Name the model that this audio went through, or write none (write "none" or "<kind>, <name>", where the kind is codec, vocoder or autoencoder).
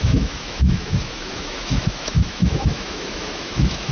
autoencoder, DAC-VAE